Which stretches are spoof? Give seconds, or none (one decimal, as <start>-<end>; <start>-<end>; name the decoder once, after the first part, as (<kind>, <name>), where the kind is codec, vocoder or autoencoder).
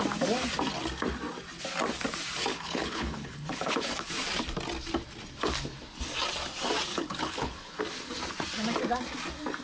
2.5-4.1 (codec, HILCodec); 6.9-7.8